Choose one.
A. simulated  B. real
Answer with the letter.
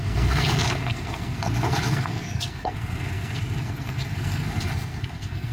A